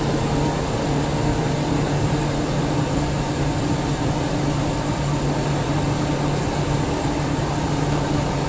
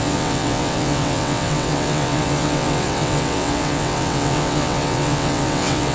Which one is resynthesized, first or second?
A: second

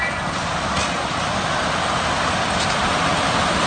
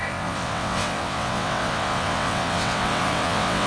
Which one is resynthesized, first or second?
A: second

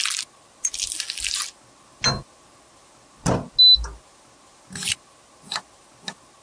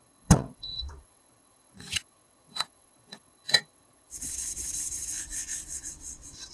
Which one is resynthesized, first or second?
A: second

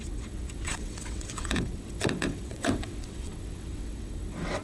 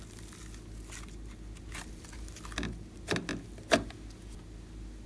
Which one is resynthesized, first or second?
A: first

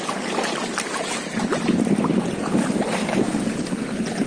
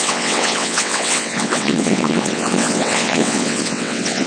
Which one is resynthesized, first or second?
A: second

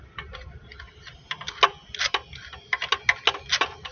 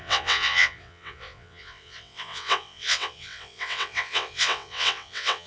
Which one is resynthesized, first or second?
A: second